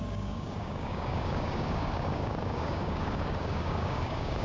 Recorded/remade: remade